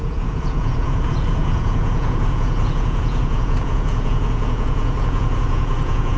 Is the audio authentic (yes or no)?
no